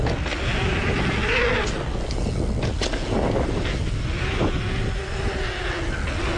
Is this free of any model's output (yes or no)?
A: yes